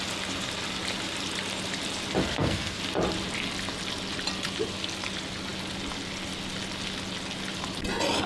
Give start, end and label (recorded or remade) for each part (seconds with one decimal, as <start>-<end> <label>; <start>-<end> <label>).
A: 0.0-2.2 recorded; 2.2-2.8 remade; 2.8-8.3 recorded